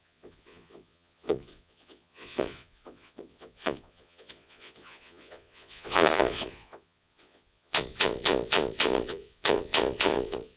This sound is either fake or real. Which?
fake